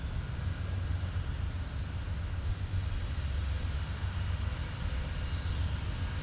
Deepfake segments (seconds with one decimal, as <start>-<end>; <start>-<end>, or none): 2.5-3.0